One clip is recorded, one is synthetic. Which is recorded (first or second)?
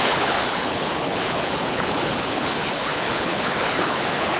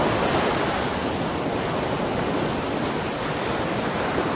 second